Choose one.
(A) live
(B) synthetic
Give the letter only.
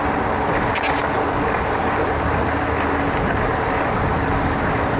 A